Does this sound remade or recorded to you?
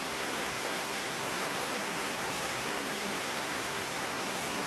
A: remade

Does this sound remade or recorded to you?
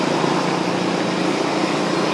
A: recorded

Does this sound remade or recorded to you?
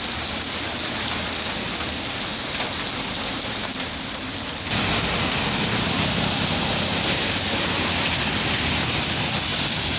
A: recorded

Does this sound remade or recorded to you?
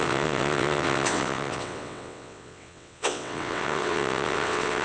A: remade